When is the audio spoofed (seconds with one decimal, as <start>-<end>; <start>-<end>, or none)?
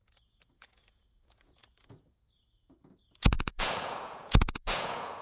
0.0-5.2